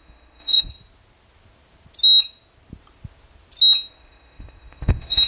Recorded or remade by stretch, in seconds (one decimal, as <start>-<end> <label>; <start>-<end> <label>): 0.0-0.7 remade; 0.7-3.9 recorded; 3.9-5.3 remade